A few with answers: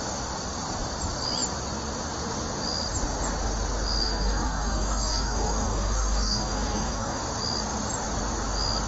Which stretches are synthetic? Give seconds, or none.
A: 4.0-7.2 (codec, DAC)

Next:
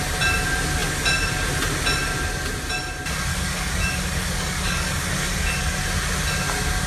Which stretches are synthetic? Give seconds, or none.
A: 3.3-5.8 (codec, DAC)

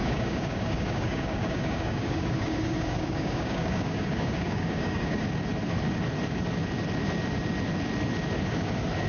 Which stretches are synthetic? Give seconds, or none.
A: 0.0-5.2 (codec, DAC)

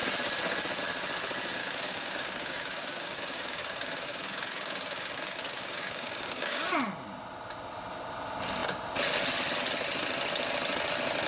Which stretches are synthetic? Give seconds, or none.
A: 1.6-6.7 (codec, DAC)

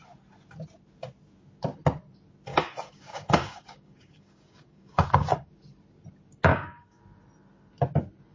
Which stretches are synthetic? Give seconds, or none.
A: 2.5-5.5 (codec, DAC); 6.5-7.0

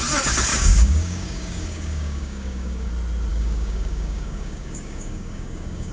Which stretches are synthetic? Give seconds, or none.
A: 0.5-2.9 (codec, DAC); 3.3-5.9